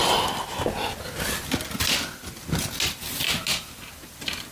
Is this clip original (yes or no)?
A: yes